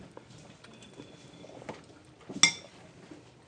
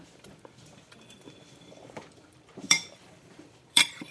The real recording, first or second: first